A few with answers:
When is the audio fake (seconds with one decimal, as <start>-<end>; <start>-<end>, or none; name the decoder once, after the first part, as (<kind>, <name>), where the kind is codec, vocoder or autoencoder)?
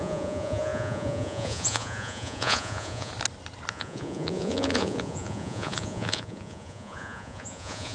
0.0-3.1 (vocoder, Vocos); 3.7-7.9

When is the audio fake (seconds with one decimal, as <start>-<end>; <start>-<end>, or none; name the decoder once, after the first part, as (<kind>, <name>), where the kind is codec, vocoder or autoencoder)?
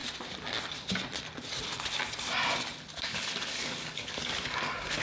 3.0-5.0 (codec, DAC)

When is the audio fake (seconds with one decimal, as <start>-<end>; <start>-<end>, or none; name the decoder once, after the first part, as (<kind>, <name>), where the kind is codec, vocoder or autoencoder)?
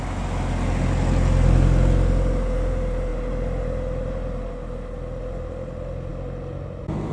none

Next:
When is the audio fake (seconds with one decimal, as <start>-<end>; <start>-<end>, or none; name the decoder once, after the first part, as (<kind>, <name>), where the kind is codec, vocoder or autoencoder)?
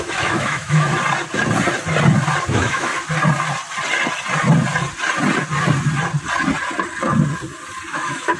0.0-0.9 (autoencoder, DAC-VAE); 2.5-2.9; 7.9-8.4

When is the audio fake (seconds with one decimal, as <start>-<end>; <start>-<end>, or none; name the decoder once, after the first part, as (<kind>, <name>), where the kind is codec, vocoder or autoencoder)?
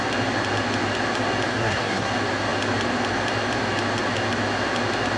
1.5-2.1 (codec, SNAC)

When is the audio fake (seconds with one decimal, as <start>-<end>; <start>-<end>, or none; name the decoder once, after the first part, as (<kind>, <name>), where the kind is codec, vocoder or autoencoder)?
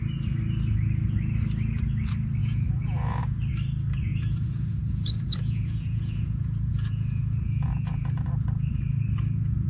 2.4-3.2 (vocoder, Vocos); 4.1-8.3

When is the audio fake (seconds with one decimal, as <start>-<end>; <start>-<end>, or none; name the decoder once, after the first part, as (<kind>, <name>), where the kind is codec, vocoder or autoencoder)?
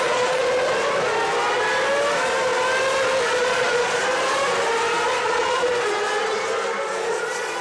0.0-0.4 (vocoder, Vocos); 3.4-4.0; 5.2-5.7; 7.1-7.6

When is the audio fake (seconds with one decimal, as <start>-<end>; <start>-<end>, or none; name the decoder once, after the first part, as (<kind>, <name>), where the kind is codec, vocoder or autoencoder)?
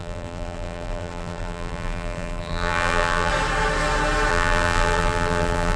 0.0-3.3 (vocoder, BigVGAN v2); 4.3-5.8